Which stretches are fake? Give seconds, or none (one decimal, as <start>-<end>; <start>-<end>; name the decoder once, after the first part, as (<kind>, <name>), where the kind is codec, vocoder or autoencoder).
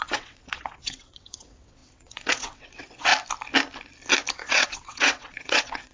0.0-3.1 (vocoder, WaveNeXt); 4.3-5.9